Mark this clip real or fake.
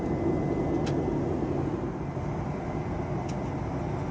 real